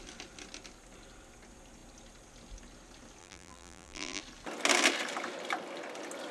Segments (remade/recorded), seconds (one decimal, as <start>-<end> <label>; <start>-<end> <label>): 0.0-3.2 recorded; 3.2-4.2 remade; 4.2-6.3 recorded